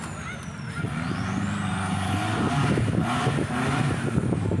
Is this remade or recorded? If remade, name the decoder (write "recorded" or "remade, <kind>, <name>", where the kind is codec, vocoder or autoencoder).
recorded